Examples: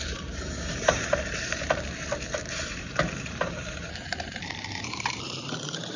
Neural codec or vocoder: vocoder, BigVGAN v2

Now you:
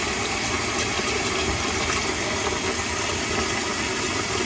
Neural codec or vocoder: none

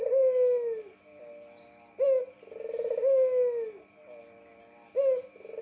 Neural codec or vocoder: none